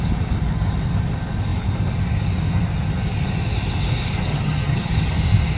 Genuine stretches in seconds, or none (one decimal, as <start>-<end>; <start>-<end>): 0.0-4.3; 4.9-5.6